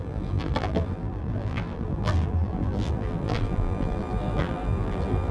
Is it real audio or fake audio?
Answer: fake